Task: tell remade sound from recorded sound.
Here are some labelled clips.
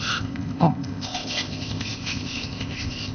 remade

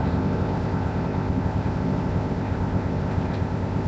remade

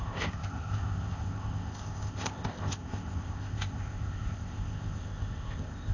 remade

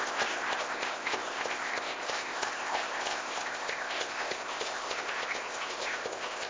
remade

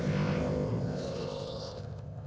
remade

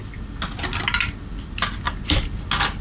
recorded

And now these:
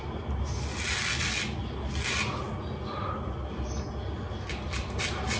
recorded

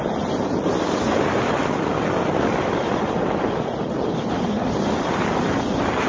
recorded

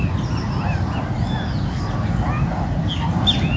recorded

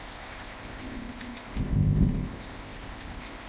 remade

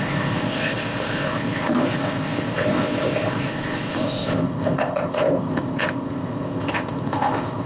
remade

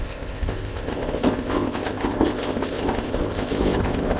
remade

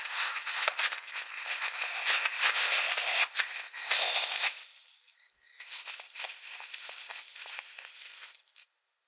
remade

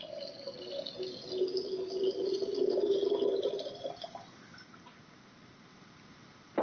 recorded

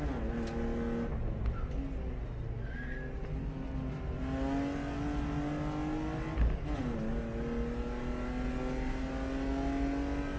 recorded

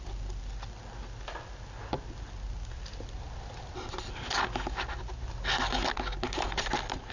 recorded